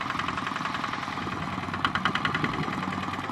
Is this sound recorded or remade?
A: recorded